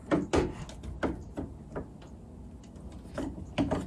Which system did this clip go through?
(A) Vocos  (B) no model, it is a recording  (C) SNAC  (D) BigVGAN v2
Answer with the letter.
B